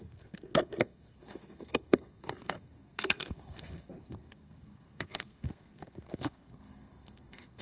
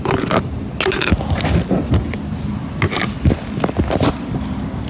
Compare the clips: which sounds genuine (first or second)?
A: second